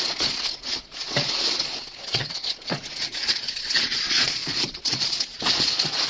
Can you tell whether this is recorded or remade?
remade